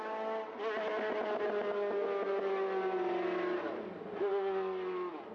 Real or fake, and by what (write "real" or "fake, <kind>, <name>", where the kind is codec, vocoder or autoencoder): real